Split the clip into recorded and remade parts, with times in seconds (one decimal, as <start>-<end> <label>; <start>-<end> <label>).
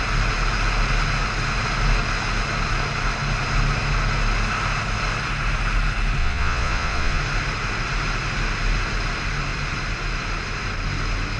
0.0-6.2 recorded; 6.2-7.2 remade; 7.2-11.4 recorded